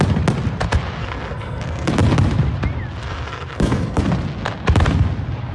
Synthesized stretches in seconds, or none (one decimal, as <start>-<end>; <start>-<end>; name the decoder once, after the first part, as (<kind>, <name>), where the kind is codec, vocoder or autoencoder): 1.0-1.9 (codec, SNAC); 3.0-4.0

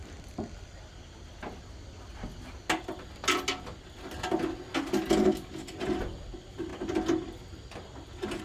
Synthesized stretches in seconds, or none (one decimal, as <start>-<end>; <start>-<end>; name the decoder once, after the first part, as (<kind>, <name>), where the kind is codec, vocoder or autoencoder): none

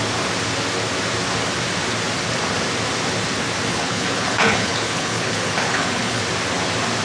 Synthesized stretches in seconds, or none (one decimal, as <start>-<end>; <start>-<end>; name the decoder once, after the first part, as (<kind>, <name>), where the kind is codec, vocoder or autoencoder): 3.7-6.2 (codec, HILCodec)